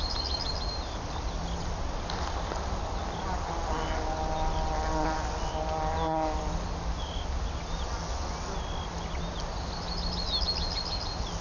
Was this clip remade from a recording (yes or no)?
no